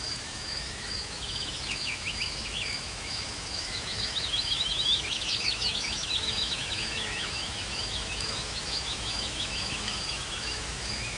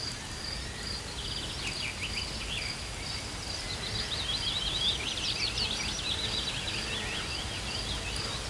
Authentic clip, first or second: second